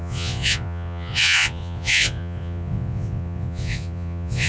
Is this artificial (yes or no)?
yes